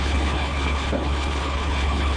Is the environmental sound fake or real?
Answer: fake